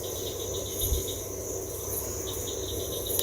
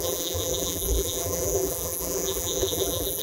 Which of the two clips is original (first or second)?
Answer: first